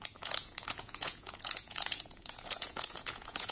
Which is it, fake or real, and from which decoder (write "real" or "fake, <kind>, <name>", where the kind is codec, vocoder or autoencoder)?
fake, vocoder, Vocos